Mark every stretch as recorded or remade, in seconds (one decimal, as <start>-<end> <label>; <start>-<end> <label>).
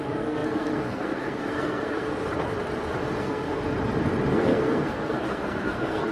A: 0.0-2.1 remade; 2.1-3.2 recorded; 3.2-3.6 remade; 3.6-4.3 recorded; 4.3-6.1 remade